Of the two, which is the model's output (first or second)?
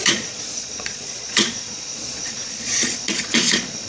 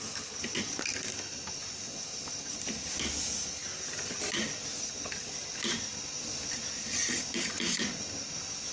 first